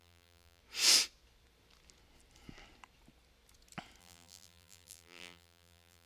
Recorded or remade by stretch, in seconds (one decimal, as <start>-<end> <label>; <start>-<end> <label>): 0.0-0.6 remade; 0.6-4.0 recorded; 4.0-6.1 remade